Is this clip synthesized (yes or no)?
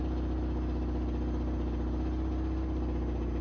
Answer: no